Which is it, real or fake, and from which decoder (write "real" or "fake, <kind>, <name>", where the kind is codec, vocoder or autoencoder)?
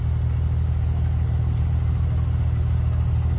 real